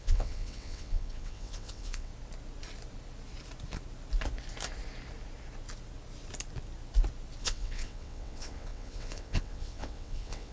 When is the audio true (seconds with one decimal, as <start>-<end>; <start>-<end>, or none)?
2.1-7.4